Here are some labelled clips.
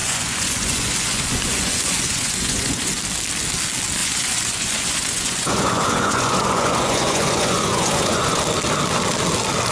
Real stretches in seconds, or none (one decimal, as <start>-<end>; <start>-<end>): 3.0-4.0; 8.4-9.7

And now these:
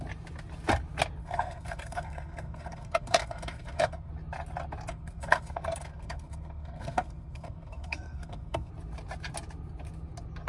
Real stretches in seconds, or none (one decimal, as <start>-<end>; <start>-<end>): 0.0-1.2; 4.1-4.9; 8.7-10.5

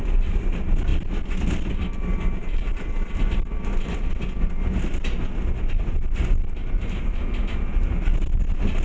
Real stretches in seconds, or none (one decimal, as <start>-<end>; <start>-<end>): 0.0-2.4; 4.1-6.6; 7.1-8.8

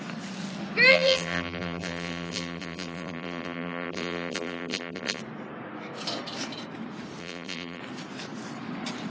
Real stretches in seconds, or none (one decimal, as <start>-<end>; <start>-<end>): 0.0-0.9; 5.2-7.2; 7.8-9.1

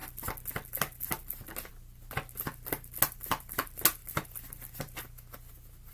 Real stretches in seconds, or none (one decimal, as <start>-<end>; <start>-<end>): 0.0-5.9